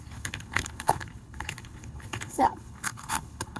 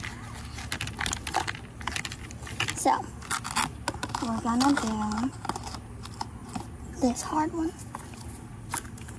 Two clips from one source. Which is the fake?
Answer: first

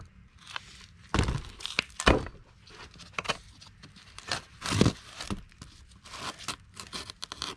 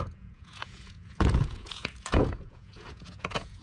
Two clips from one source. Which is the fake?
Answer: second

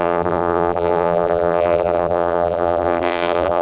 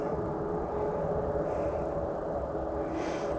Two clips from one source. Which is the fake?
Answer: first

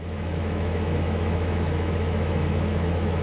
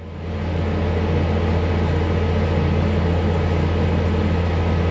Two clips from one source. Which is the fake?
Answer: first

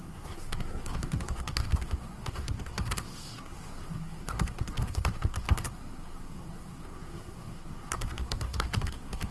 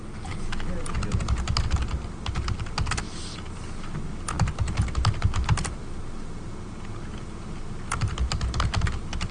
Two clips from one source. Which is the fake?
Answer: first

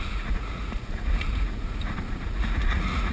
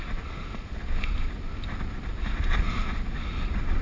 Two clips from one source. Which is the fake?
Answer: first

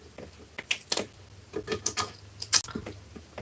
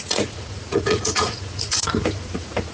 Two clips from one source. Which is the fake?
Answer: second